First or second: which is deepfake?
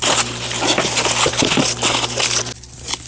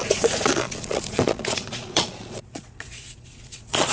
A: second